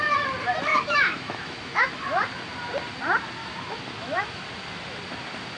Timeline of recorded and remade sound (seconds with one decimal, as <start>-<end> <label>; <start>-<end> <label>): 0.0-0.7 recorded; 0.7-1.9 remade; 1.9-3.4 recorded; 3.4-4.4 remade; 4.4-5.6 recorded